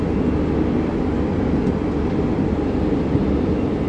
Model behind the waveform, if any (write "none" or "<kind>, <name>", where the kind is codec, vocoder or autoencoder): none